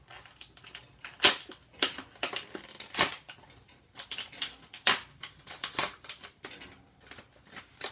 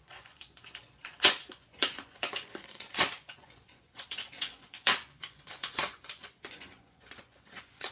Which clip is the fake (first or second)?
second